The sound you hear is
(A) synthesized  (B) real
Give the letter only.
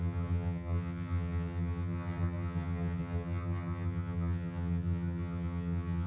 A